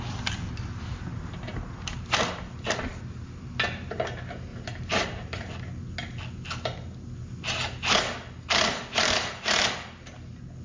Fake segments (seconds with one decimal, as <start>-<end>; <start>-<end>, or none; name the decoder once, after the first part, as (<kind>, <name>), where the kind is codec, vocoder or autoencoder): 4.5-5.5 (vocoder, BigVGAN v2); 8.9-9.7